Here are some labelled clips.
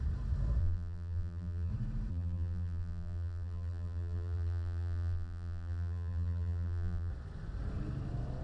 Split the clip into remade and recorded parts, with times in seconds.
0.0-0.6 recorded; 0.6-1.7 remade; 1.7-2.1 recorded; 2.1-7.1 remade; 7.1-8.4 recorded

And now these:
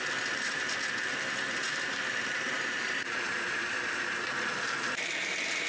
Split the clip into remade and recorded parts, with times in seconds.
0.0-1.7 recorded; 1.7-5.1 remade; 5.1-5.7 recorded

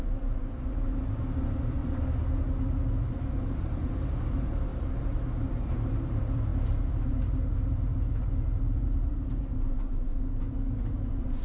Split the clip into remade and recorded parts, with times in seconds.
0.0-1.8 remade; 1.8-3.0 recorded; 3.0-11.4 remade

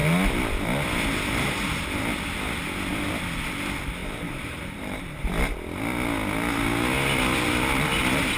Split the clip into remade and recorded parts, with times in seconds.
0.0-4.0 recorded; 4.0-5.3 remade; 5.3-8.4 recorded

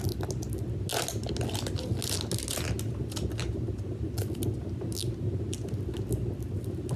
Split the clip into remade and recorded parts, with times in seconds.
0.0-7.0 recorded

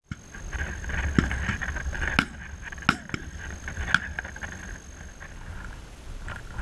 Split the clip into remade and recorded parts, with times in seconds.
0.0-6.6 recorded

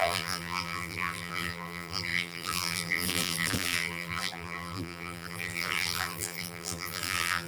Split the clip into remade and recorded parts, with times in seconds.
0.0-7.5 remade